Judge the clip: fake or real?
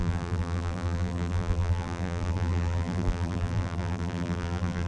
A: fake